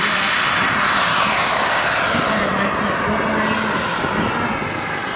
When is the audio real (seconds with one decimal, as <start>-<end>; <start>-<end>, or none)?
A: 0.0-1.1; 1.9-5.2